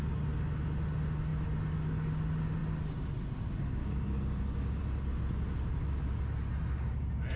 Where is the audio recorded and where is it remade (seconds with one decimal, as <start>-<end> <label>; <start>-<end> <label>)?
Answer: 0.0-3.8 recorded; 3.8-4.8 remade; 4.8-7.4 recorded